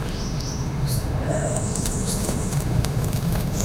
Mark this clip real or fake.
fake